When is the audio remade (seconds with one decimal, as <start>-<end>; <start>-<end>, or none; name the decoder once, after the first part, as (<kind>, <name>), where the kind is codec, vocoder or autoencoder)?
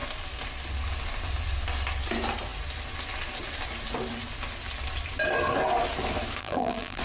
6.4-7.0 (vocoder, BigVGAN v2)